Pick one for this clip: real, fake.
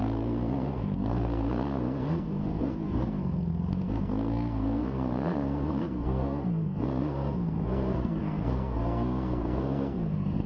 fake